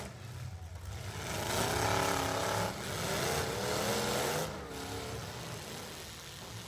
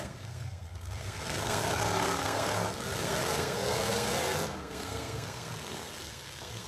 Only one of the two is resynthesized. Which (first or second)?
second